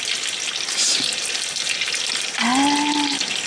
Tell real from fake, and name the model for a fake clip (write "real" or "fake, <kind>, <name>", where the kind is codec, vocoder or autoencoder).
real